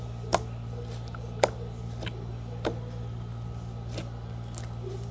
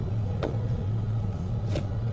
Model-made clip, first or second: second